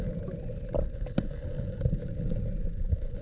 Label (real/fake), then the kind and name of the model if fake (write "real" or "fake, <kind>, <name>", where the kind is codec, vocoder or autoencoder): real